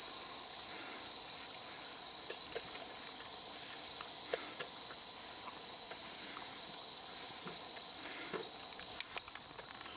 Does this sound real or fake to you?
real